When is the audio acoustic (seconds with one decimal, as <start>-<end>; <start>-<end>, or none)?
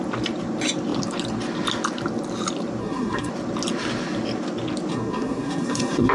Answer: 0.0-2.8; 3.3-4.9